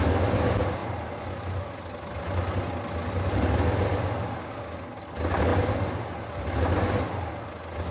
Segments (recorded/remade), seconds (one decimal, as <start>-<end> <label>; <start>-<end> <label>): 0.0-7.9 recorded